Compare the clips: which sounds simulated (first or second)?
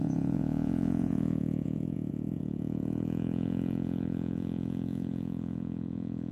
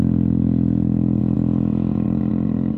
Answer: first